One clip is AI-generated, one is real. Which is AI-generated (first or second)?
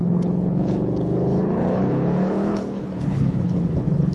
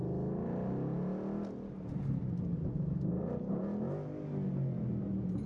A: first